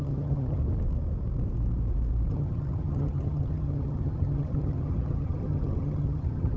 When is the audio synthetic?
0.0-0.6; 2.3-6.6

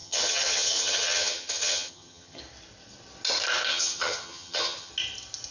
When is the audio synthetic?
0.0-2.4; 3.7-4.9

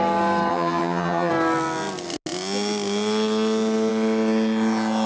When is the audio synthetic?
0.5-1.3

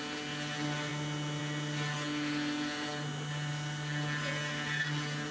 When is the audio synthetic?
none